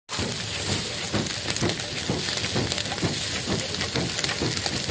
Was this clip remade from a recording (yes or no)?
no